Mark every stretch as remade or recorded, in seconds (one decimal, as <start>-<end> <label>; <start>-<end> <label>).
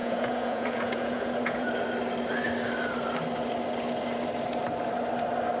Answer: 0.0-1.7 remade; 1.7-5.6 recorded